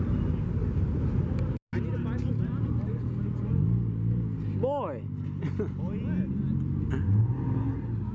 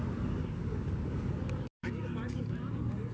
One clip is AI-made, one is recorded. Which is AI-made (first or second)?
second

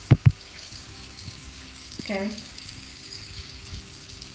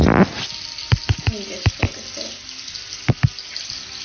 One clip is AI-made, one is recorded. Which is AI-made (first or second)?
first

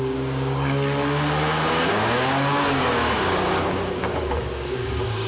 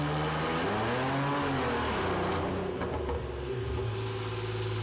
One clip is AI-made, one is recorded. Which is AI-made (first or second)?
first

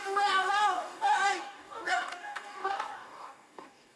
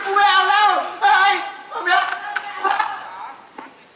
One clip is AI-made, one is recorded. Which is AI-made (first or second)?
first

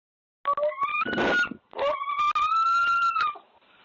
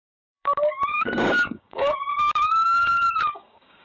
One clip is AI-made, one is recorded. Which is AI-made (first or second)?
second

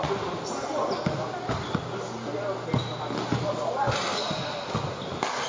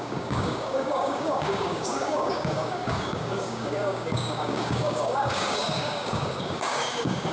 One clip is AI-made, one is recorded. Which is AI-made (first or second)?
second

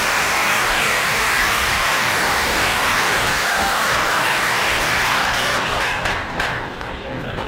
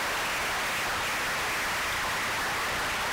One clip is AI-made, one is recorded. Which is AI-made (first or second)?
first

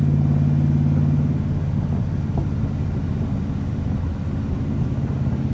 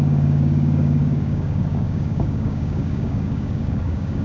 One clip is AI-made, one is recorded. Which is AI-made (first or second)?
second